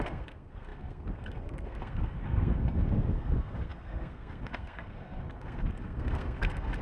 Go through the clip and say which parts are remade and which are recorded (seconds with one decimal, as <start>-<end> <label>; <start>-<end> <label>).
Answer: 0.0-6.8 remade